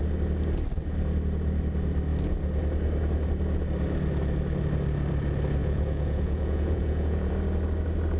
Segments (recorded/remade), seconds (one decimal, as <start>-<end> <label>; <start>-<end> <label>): 0.0-5.6 recorded; 5.6-7.3 remade; 7.3-8.2 recorded